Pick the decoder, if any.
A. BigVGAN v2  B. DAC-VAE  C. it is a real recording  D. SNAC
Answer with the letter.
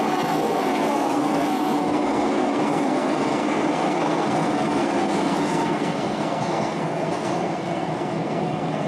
D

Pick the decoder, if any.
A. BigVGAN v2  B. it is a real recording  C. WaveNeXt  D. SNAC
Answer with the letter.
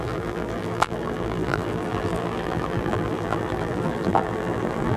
A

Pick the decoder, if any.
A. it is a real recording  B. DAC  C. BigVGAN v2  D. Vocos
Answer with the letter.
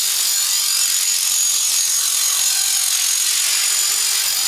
A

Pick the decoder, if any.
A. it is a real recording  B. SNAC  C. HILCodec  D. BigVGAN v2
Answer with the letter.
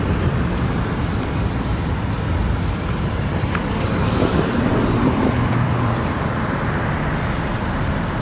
D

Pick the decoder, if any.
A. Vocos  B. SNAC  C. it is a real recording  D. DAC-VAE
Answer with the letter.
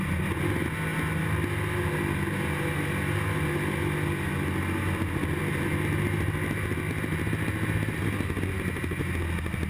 C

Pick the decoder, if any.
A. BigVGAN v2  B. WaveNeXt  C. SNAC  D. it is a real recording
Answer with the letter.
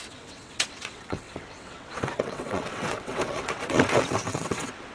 B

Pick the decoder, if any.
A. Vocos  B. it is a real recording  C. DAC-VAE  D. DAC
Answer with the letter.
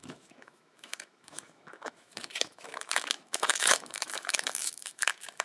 C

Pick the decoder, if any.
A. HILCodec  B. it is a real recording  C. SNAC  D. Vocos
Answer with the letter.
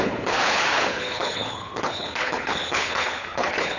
A